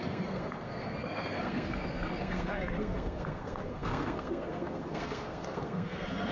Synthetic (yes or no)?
yes